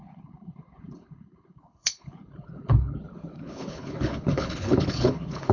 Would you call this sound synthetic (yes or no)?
yes